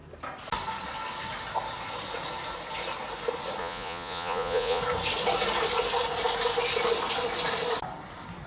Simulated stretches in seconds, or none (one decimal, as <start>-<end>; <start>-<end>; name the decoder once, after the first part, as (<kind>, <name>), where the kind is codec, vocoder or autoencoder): 3.6-4.8 (vocoder, Vocos)